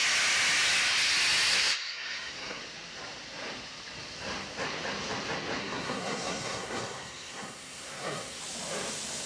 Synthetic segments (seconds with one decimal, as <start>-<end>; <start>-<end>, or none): 1.5-2.6; 5.6-8.4